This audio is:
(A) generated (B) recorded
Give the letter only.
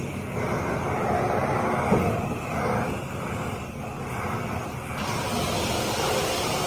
B